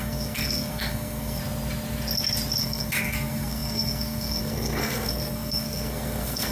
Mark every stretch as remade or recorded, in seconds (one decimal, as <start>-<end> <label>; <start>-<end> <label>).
0.0-1.4 remade; 1.4-2.6 recorded; 2.6-6.5 remade